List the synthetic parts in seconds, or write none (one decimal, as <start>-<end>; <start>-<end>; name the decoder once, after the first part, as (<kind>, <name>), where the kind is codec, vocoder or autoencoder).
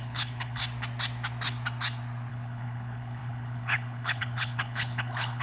0.0-0.6 (codec, HILCodec); 2.3-5.4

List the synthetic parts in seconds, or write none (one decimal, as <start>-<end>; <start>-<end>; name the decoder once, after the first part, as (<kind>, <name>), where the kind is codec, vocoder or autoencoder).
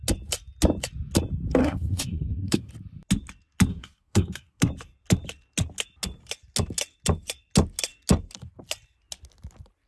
1.6-2.7 (codec, SNAC); 3.7-4.6